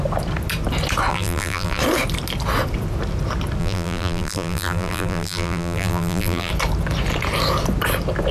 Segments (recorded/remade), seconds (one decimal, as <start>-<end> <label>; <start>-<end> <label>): 0.0-1.1 recorded; 1.1-1.8 remade; 1.8-3.6 recorded; 3.6-6.5 remade; 6.5-8.3 recorded